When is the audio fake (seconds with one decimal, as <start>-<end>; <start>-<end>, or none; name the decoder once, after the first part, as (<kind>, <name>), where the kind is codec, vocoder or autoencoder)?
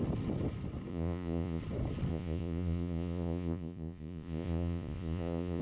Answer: 0.9-1.6 (vocoder, Vocos); 2.1-5.6